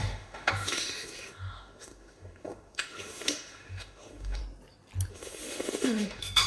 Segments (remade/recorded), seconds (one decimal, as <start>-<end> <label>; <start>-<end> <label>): 0.0-4.4 remade; 4.4-5.1 recorded; 5.1-6.5 remade

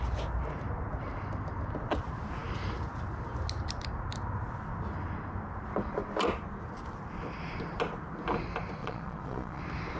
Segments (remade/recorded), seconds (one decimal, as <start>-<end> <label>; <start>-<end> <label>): 0.0-8.8 recorded; 8.8-9.6 remade; 9.6-10.0 recorded

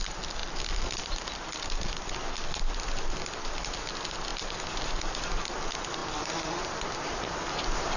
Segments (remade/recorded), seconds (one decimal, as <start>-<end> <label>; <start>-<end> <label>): 0.0-6.0 recorded; 6.0-7.2 remade; 7.2-8.0 recorded

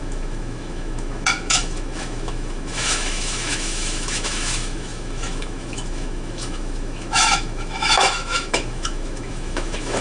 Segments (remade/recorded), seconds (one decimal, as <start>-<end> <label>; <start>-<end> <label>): 0.0-10.0 remade

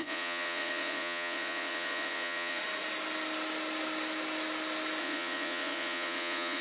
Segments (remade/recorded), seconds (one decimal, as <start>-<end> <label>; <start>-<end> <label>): 0.0-2.6 remade; 2.6-5.0 recorded; 5.0-6.6 remade